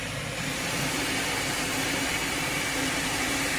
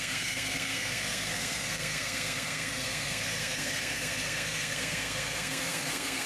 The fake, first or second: second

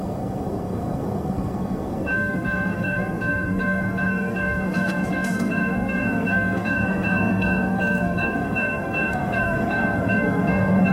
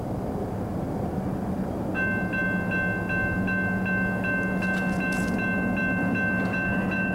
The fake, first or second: first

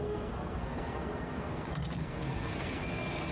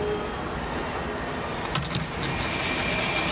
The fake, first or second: first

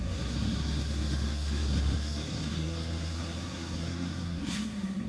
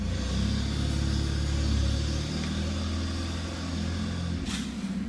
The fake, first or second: first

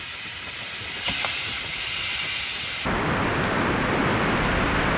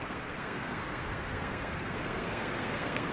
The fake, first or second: second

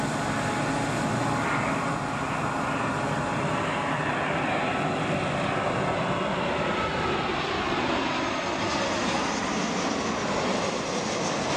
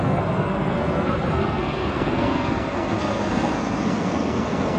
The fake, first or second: second